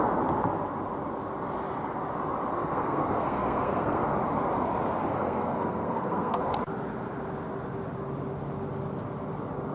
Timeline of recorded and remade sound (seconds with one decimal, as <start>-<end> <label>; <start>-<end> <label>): 0.0-2.5 recorded; 2.5-4.0 remade; 4.0-5.1 recorded; 5.1-6.4 remade; 6.4-9.7 recorded